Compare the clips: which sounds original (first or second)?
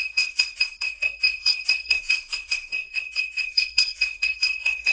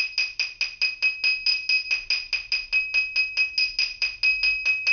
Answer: second